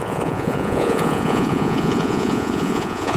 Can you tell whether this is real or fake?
fake